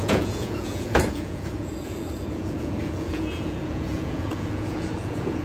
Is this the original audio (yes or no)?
no